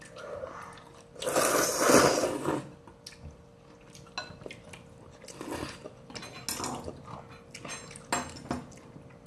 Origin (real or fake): real